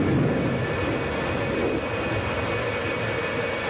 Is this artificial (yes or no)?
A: no